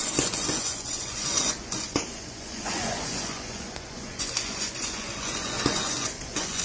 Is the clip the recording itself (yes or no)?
no